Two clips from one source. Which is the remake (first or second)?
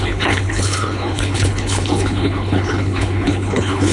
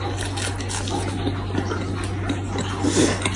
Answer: first